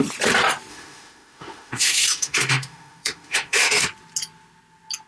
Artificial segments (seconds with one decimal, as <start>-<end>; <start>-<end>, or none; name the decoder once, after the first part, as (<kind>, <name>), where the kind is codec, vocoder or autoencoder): 0.7-3.8 (autoencoder, DAC-VAE)